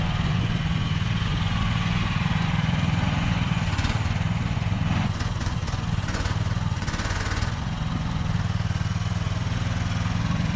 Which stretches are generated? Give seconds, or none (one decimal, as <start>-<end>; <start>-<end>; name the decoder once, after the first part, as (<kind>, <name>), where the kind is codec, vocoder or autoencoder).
0.0-10.6 (vocoder, Vocos)